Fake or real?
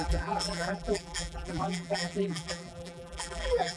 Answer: fake